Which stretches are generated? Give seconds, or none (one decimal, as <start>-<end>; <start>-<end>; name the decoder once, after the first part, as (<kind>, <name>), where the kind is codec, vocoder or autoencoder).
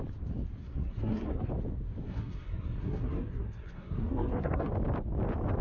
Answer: 0.6-1.5 (codec, SNAC); 2.0-4.7